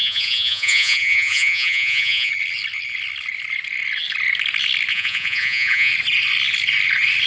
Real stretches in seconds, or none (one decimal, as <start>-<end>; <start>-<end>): 2.3-4.9; 5.9-7.3